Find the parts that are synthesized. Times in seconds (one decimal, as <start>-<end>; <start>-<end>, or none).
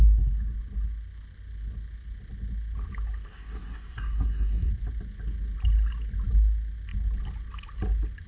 3.3-4.7